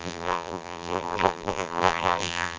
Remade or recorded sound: remade